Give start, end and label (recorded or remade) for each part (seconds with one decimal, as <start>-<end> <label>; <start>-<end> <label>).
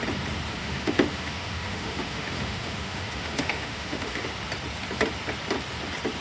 0.0-0.6 recorded; 0.6-4.3 remade; 4.3-6.2 recorded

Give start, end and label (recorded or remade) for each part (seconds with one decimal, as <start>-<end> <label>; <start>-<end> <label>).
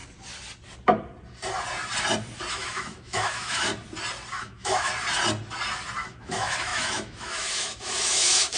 0.0-2.5 recorded; 2.5-3.7 remade; 3.7-4.3 recorded; 4.3-4.9 remade; 4.9-6.1 recorded; 6.1-8.6 remade